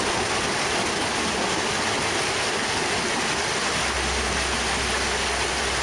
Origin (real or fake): real